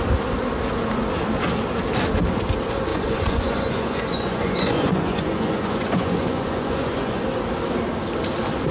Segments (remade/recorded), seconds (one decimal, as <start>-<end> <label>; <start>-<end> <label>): 0.0-2.9 recorded; 2.9-7.2 remade; 7.2-8.7 recorded